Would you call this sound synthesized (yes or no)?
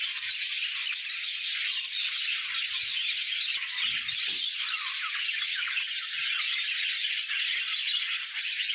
no